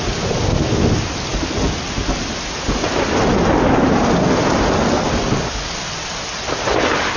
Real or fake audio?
real